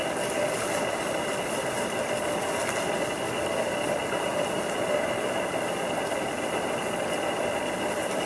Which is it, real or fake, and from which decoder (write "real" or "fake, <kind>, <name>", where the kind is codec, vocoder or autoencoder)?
real